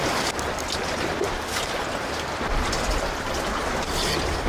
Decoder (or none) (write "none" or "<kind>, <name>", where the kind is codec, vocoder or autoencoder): none